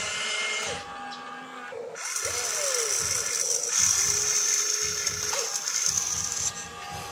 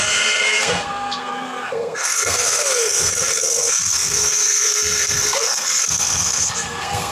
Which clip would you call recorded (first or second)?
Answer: first